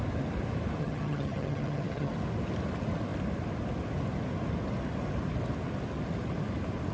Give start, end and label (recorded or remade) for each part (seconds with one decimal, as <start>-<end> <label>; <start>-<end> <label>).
0.0-0.8 recorded; 0.8-2.1 remade; 2.1-6.9 recorded